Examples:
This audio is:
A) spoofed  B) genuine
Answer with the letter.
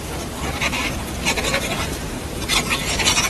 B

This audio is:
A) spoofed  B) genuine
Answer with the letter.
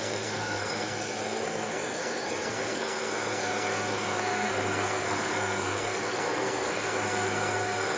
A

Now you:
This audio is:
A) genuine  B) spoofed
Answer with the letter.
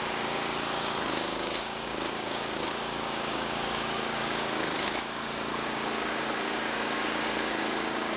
B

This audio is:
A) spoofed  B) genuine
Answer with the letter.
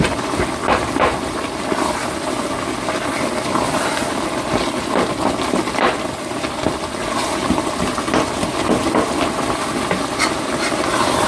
B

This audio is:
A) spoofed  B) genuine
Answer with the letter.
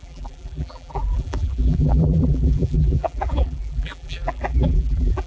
A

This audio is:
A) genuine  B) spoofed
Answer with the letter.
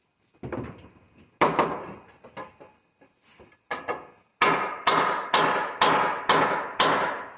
A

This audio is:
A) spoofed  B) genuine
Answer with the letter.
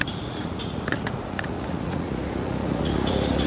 A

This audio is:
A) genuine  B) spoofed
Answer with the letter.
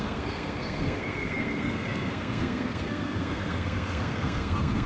B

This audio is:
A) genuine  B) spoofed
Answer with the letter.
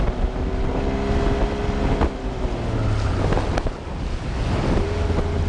A